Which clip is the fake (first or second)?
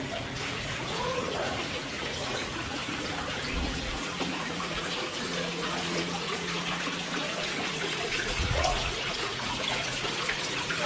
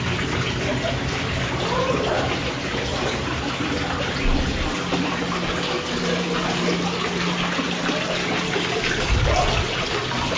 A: first